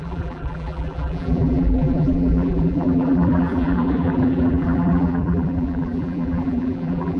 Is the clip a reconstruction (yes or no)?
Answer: yes